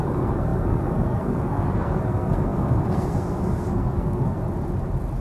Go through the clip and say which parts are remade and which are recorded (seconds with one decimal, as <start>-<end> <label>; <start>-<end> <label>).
0.0-4.4 remade; 4.4-5.2 recorded